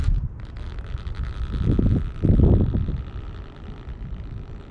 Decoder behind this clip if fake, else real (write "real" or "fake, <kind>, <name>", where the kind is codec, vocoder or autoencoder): real